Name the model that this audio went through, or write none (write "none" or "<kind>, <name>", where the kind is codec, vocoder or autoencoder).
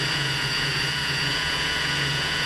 vocoder, Vocos